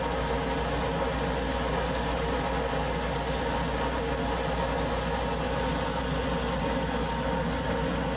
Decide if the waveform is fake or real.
real